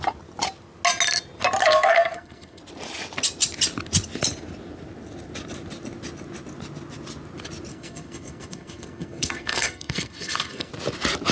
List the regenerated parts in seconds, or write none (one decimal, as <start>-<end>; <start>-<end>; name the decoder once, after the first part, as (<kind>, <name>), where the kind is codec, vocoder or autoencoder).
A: 1.6-2.6 (codec, SNAC); 7.7-10.7